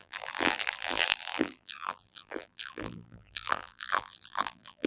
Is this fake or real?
fake